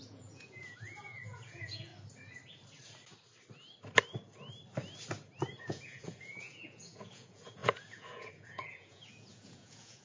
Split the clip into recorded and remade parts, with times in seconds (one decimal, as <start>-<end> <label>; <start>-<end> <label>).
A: 0.0-1.9 remade; 1.9-5.6 recorded; 5.6-10.0 remade